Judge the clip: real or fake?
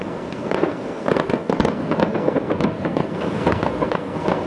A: fake